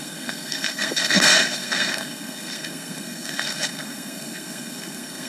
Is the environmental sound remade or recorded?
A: remade